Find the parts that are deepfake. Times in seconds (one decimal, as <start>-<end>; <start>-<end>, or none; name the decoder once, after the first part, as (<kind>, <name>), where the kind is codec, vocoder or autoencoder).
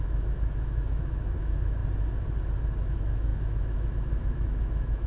0.0-1.8 (autoencoder, DAC-VAE); 2.8-5.1